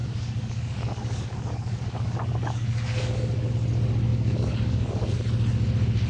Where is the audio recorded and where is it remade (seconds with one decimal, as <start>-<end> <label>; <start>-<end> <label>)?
0.0-3.5 remade; 3.5-4.1 recorded; 4.1-5.1 remade; 5.1-6.1 recorded